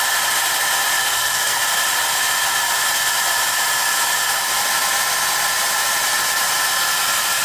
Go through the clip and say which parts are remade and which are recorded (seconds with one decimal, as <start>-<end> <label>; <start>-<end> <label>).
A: 0.0-1.0 recorded; 1.0-1.6 remade; 1.6-7.4 recorded